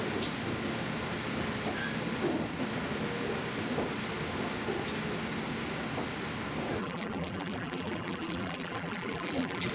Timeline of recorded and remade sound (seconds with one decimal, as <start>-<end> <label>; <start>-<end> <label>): 0.0-6.8 recorded; 6.8-9.7 remade